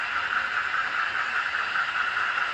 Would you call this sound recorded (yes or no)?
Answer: yes